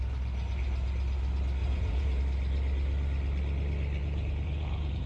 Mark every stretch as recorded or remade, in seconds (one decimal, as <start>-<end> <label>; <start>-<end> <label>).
0.0-1.6 recorded; 1.6-2.2 remade; 2.2-4.0 recorded; 4.0-5.1 remade